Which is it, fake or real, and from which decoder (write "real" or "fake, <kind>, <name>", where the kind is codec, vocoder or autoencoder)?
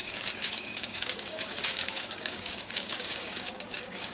fake, codec, DAC